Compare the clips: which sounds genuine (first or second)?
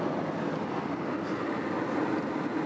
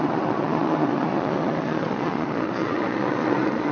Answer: first